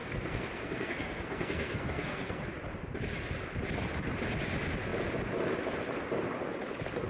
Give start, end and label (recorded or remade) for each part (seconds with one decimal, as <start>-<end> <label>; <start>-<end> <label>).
0.0-2.4 remade; 2.4-7.1 recorded